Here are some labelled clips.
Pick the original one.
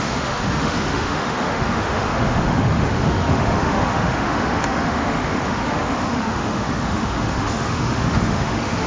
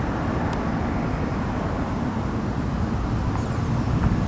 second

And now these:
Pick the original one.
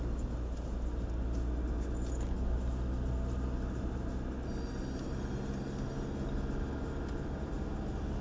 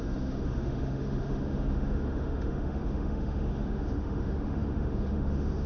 first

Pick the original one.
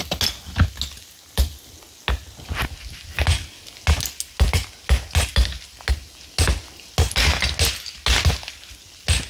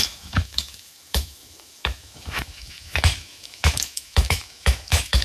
first